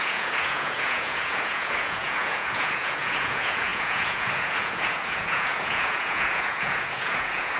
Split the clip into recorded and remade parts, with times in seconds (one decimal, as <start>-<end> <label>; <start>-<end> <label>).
0.0-7.6 remade